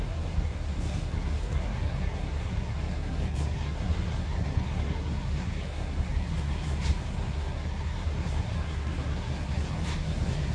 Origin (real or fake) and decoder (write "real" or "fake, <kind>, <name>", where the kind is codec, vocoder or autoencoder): fake, codec, SNAC